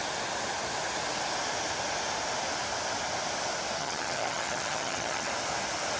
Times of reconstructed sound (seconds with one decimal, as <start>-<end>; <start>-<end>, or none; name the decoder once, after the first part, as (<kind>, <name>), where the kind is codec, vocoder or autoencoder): 3.8-5.3 (vocoder, HiFi-GAN)